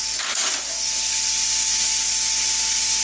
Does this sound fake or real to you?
real